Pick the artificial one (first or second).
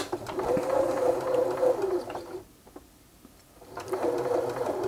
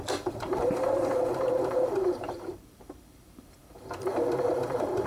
second